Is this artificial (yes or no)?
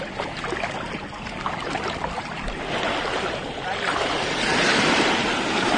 no